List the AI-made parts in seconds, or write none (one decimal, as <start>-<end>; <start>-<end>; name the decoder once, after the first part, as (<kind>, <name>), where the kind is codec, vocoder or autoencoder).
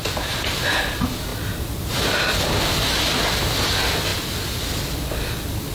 0.0-0.5 (vocoder, BigVGAN v2); 1.3-2.3